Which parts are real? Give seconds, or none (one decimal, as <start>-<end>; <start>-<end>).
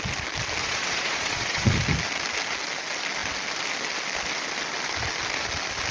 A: 0.0-0.6; 1.7-5.9